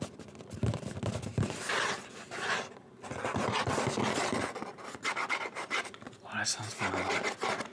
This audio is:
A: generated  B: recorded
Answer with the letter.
B